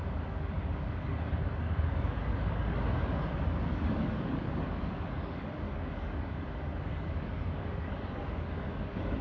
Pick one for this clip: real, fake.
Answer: fake